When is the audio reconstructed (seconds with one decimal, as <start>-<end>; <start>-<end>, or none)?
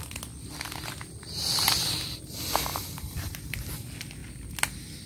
2.7-3.5